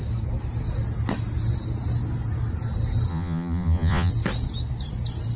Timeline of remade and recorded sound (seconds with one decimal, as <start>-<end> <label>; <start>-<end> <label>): 0.0-3.1 recorded; 3.1-4.1 remade; 4.1-5.4 recorded